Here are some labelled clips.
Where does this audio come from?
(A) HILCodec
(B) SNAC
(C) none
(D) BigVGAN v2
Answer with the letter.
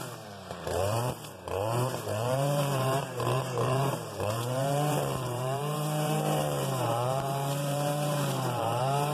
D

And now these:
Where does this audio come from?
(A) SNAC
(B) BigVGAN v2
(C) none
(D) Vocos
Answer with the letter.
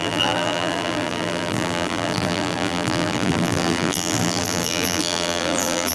B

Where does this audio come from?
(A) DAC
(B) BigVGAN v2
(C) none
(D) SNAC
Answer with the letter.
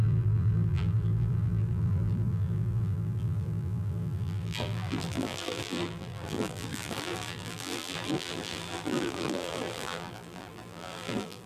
B